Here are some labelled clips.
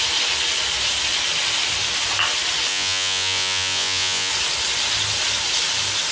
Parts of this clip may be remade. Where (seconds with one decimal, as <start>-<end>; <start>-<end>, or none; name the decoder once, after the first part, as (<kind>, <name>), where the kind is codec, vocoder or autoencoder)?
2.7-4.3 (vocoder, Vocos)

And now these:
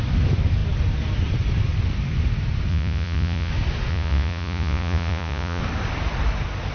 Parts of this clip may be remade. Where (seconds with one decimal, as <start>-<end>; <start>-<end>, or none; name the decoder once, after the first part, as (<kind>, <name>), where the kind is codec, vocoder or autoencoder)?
2.7-3.5 (vocoder, Vocos); 3.9-5.6

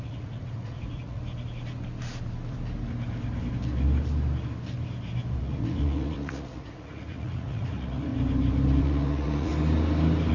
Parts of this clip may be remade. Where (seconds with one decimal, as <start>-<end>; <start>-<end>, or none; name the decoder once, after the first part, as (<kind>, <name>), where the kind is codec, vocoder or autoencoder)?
0.0-1.2 (vocoder, Vocos); 5.4-8.1; 8.8-9.5

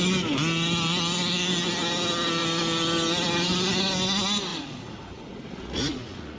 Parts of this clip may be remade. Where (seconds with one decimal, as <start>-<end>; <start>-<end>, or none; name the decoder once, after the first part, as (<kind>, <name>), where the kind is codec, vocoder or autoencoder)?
4.5-6.4 (vocoder, Vocos)